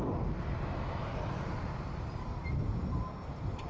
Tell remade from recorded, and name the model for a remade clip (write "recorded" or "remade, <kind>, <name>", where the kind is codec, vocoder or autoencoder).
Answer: recorded